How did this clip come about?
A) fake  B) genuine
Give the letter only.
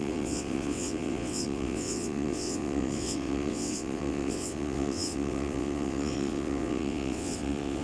A